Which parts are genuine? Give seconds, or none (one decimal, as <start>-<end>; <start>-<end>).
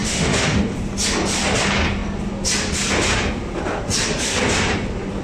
0.6-5.2